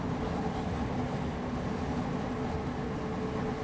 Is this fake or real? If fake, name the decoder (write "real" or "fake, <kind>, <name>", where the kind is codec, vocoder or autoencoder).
real